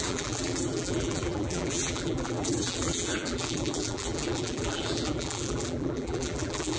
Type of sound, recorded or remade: remade